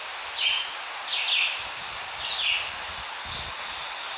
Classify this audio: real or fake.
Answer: real